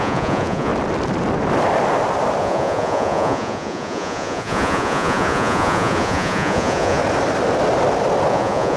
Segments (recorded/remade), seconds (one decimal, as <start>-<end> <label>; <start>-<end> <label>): 0.0-0.7 remade; 0.7-2.4 recorded; 2.4-7.0 remade; 7.0-8.3 recorded; 8.3-8.8 remade